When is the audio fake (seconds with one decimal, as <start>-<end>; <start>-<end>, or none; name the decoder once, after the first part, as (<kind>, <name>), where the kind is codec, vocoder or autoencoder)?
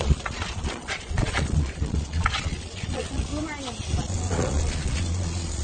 0.0-3.3 (vocoder, Vocos); 4.0-5.6